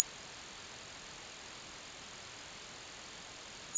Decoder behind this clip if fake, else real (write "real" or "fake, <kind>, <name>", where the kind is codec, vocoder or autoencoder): real